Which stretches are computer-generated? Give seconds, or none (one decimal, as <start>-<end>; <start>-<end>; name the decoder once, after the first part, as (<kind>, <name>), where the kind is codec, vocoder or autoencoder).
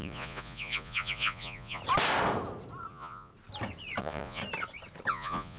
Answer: 0.0-1.8 (vocoder, Vocos); 2.9-3.3; 4.0-4.4; 5.1-5.6